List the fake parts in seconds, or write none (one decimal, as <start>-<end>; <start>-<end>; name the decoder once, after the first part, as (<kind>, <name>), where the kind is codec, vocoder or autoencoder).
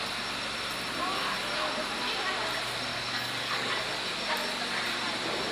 2.9-3.8 (codec, DAC)